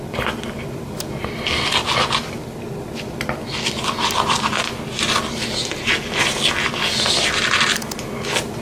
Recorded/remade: recorded